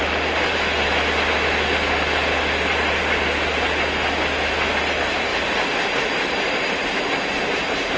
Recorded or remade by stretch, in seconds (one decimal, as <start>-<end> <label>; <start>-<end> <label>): 0.0-8.0 recorded